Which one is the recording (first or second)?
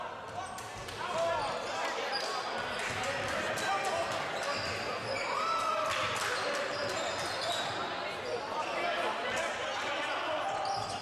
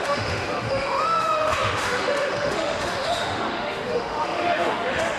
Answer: first